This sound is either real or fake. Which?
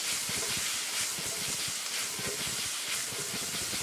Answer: real